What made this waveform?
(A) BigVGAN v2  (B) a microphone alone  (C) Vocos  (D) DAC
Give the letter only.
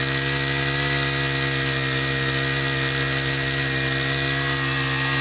B